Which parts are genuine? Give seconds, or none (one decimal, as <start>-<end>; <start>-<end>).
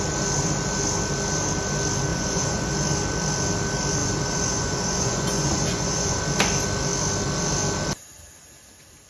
0.0-2.1; 2.7-4.0; 6.2-9.1